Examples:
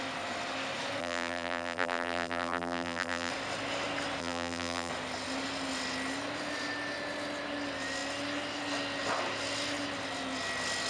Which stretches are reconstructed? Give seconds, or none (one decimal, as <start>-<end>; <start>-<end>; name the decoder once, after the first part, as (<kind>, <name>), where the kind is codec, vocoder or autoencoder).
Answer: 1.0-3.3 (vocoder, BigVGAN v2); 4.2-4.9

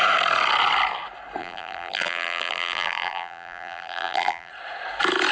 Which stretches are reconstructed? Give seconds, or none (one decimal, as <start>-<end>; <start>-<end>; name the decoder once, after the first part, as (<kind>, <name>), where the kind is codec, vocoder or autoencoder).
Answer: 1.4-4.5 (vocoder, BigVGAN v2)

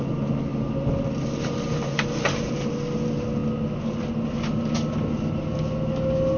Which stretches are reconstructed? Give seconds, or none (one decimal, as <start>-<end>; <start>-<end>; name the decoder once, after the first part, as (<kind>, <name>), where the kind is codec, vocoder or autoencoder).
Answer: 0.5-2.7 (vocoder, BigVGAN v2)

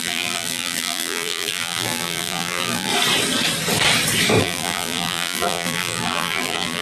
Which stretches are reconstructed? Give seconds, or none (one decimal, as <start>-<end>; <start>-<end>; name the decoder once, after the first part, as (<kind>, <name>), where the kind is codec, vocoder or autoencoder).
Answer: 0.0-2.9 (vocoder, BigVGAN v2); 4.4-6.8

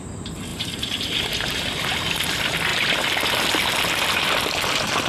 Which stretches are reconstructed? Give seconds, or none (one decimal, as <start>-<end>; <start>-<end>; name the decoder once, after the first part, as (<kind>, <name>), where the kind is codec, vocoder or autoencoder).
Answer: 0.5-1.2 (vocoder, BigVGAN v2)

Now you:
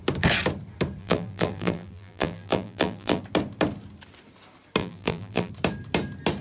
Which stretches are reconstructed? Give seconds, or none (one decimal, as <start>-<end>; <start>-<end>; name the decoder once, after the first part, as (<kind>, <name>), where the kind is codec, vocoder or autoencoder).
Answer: 1.0-3.2 (vocoder, BigVGAN v2); 4.8-5.5

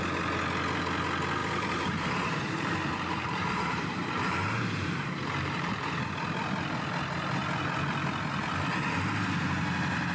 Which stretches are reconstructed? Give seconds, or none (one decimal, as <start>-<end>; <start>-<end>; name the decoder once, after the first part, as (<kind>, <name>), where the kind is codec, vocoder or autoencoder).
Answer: 1.4-6.1 (vocoder, BigVGAN v2)